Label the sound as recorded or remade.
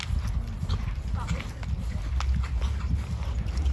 recorded